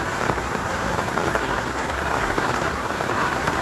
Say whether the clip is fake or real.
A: fake